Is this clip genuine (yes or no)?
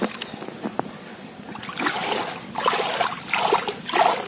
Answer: yes